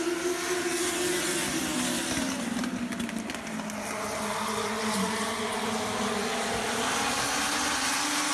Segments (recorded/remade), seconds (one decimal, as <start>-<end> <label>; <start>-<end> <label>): 0.0-8.3 recorded